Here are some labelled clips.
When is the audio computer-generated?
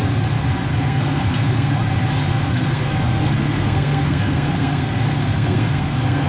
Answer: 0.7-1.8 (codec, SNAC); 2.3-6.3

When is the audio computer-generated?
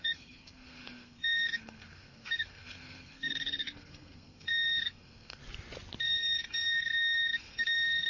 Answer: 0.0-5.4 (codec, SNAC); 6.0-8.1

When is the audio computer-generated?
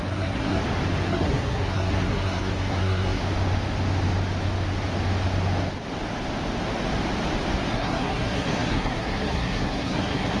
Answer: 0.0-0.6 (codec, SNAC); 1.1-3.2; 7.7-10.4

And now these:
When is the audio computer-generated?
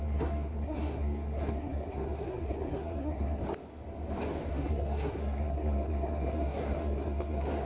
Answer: 0.0-3.4 (codec, SNAC); 4.5-7.7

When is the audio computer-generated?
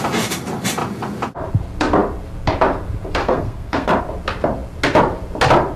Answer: 3.2-4.0 (codec, SNAC)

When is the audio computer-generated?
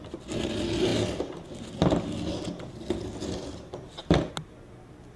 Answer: none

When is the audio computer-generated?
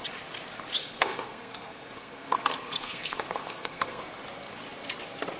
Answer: 0.8-4.0 (codec, SNAC)